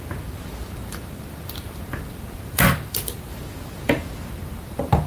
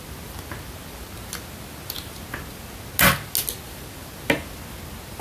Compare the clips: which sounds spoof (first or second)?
first